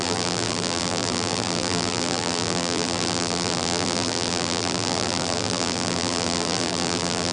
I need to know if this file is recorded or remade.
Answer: remade